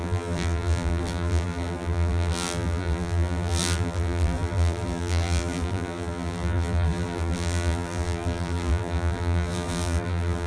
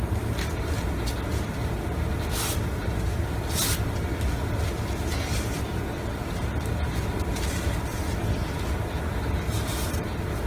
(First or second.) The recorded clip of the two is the second